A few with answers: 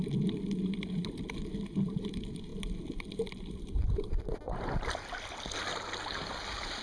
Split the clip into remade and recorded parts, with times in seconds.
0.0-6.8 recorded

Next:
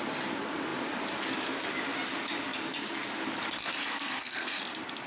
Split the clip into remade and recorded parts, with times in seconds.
0.0-3.9 recorded; 3.9-4.6 remade; 4.6-5.1 recorded

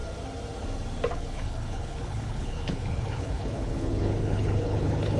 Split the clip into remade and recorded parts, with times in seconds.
0.0-1.1 recorded; 1.1-5.2 remade

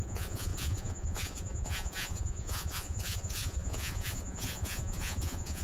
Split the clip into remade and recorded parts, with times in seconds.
0.0-5.6 remade